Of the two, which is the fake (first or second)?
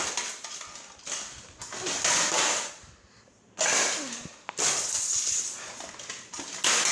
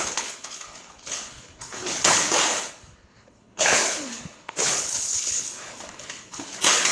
second